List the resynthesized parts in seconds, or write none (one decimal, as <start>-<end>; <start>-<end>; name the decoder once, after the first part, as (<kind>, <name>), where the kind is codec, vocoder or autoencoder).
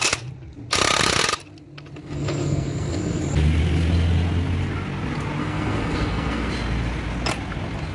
2.0-3.2 (codec, SNAC); 5.4-6.5